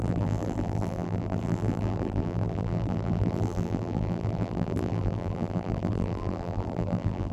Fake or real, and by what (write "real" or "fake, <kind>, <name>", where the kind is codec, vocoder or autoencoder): fake, vocoder, BigVGAN v2